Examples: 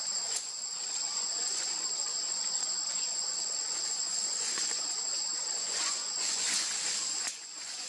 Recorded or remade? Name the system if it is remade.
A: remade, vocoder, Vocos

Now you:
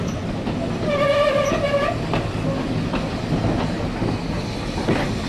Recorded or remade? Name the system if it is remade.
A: recorded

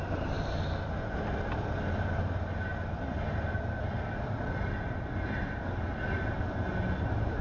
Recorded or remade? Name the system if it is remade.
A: recorded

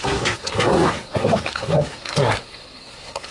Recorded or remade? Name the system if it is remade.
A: remade, codec, SNAC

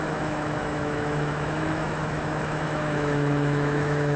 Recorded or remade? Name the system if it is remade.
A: remade, autoencoder, DAC-VAE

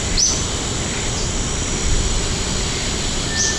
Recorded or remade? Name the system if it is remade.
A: recorded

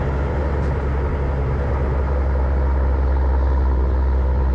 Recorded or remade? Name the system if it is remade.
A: recorded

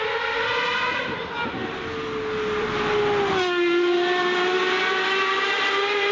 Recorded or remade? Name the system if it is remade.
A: recorded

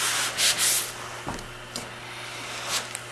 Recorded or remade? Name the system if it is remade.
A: recorded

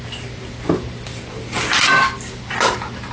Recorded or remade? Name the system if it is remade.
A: recorded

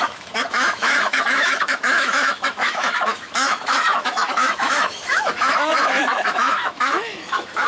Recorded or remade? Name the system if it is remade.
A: remade, autoencoder, DAC-VAE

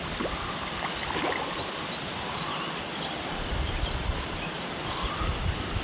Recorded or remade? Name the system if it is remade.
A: remade, vocoder, BigVGAN v2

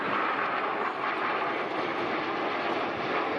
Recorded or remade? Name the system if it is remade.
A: recorded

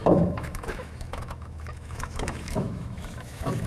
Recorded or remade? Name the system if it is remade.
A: remade, autoencoder, DAC-VAE